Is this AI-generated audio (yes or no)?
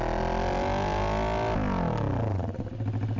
no